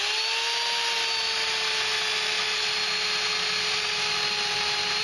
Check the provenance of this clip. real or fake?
real